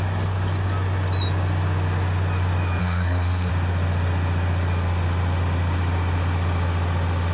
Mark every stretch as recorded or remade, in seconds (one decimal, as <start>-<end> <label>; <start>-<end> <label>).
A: 0.0-2.8 recorded; 2.8-3.5 remade; 3.5-7.3 recorded